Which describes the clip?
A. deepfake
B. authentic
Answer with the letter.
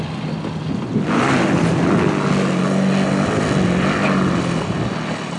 B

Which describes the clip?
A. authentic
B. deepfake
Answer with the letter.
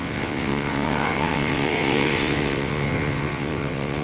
B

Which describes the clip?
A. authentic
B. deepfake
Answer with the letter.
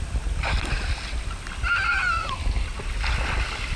A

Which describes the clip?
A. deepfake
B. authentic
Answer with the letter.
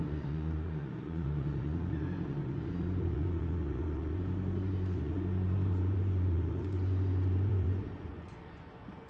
A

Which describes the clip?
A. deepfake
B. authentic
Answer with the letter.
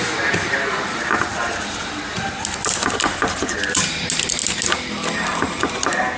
B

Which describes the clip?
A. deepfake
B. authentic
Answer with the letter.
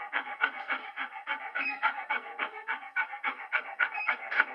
A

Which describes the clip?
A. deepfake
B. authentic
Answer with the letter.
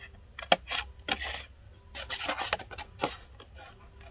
B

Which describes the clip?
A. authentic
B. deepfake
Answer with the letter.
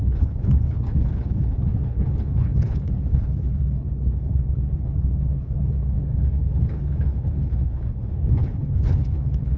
B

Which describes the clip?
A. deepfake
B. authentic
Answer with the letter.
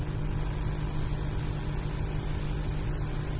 B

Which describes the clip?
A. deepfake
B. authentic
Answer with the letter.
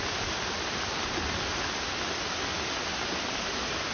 B